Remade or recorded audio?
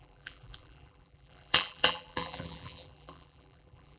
remade